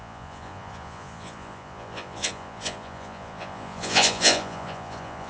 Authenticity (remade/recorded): remade